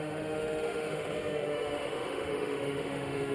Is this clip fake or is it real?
fake